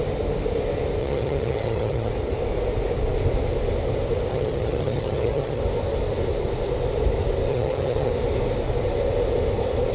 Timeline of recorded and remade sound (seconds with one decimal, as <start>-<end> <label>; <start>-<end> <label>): 0.0-1.0 recorded; 1.0-2.1 remade; 2.1-4.3 recorded; 4.3-5.6 remade; 5.6-7.5 recorded; 7.5-8.1 remade; 8.1-9.9 recorded

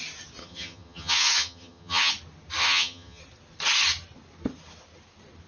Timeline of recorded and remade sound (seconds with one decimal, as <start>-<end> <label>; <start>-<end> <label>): 0.0-0.4 recorded; 0.4-2.1 remade; 2.1-2.6 recorded; 2.6-3.2 remade; 3.2-5.5 recorded